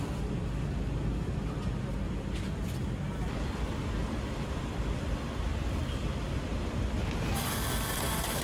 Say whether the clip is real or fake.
real